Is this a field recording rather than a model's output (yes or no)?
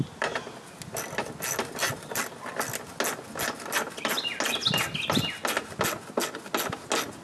yes